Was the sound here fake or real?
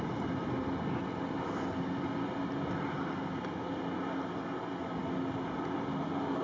real